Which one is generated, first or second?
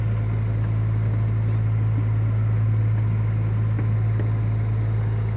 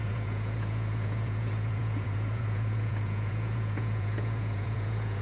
second